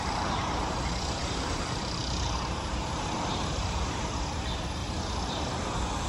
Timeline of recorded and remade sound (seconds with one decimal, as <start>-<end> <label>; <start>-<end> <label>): 0.0-4.8 remade; 4.8-6.1 recorded